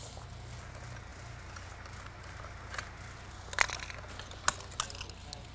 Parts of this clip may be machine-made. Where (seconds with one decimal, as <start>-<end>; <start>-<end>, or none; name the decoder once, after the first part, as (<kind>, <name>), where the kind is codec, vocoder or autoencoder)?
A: none